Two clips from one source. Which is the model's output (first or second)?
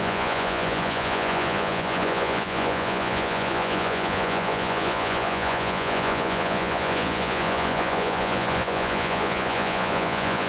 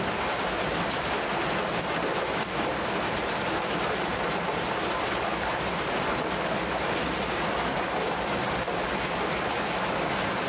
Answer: first